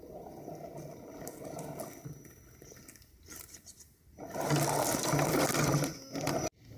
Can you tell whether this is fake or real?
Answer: real